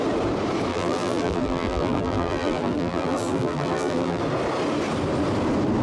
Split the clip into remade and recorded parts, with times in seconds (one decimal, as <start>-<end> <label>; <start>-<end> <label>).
0.0-0.7 recorded; 0.7-4.2 remade; 4.2-5.8 recorded